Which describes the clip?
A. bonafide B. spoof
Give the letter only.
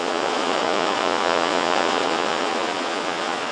B